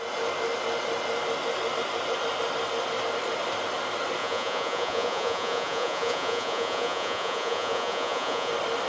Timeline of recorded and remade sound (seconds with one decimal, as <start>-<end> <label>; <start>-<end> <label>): 0.0-4.2 recorded; 4.2-8.5 remade; 8.5-8.9 recorded